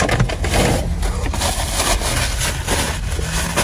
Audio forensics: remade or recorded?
recorded